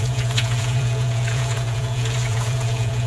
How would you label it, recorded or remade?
remade